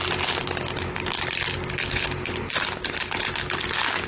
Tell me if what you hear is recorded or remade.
recorded